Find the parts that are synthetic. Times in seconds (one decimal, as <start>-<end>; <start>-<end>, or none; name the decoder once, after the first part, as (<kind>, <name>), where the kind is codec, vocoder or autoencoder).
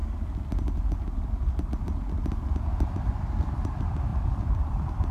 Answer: 4.1-5.1 (vocoder, BigVGAN v2)